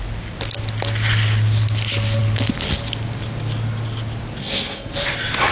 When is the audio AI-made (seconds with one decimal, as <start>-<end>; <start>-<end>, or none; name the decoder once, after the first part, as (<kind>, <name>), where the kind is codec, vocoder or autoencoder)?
4.4-4.9 (codec, SNAC)